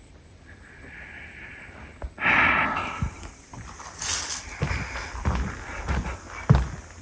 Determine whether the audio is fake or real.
real